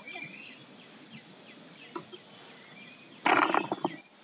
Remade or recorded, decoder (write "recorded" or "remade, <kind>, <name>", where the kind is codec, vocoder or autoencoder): recorded